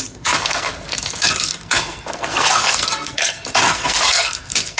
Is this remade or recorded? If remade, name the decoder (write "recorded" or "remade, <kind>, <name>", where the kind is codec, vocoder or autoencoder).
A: remade, codec, SNAC